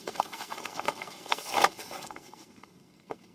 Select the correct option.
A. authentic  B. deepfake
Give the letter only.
B